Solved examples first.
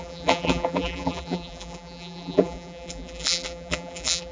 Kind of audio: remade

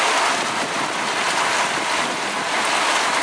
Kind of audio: recorded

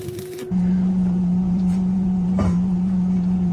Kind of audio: remade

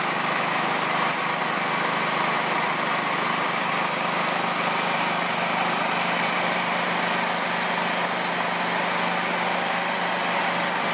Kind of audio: recorded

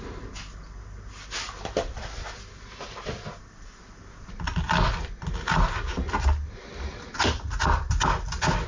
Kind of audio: recorded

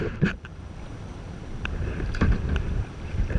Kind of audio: remade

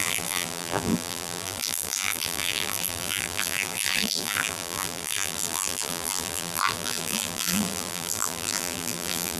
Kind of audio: remade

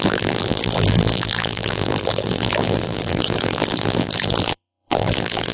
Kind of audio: remade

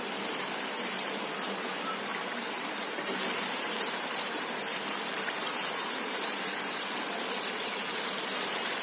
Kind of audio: remade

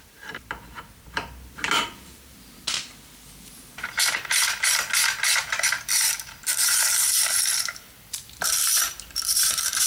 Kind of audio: remade